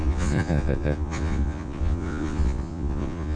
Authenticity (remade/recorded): remade